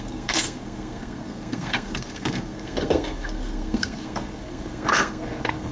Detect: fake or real fake